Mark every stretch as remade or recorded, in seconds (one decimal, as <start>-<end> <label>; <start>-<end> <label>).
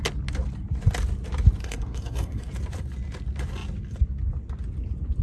0.0-1.6 recorded; 1.6-2.5 remade; 2.5-5.2 recorded